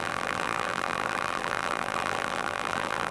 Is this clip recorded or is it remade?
remade